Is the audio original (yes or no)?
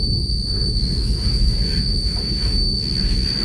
no